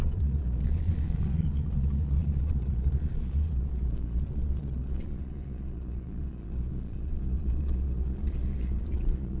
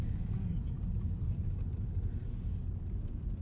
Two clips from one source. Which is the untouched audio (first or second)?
second